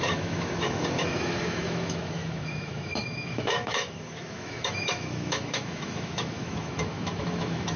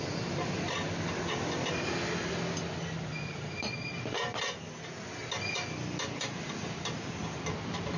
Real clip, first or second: second